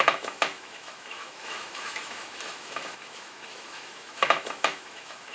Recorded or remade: remade